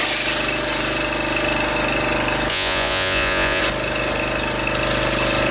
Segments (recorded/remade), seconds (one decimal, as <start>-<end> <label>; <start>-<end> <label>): 0.0-2.5 recorded; 2.5-3.6 remade; 3.6-5.5 recorded